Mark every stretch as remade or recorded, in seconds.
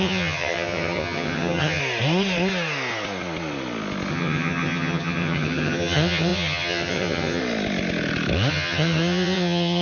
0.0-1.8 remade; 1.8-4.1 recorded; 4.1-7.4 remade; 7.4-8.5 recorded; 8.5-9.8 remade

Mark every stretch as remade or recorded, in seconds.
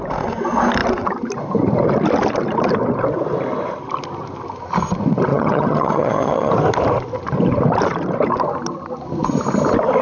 0.0-5.3 recorded; 5.3-6.5 remade; 6.5-10.0 recorded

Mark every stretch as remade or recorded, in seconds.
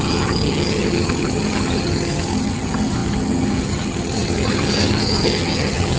0.0-6.0 remade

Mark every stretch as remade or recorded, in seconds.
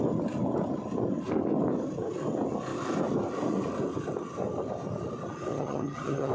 0.0-5.5 recorded; 5.5-6.3 remade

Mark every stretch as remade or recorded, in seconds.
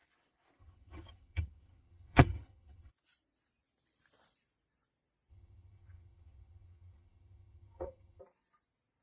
0.0-0.6 recorded; 0.6-2.9 remade; 2.9-5.3 recorded; 5.3-8.2 remade; 8.2-9.0 recorded